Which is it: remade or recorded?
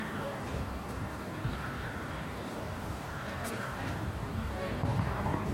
remade